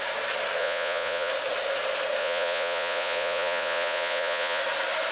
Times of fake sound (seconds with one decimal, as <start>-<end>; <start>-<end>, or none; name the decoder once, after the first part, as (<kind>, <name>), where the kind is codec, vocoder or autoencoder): 0.6-1.3 (vocoder, Vocos); 2.2-4.6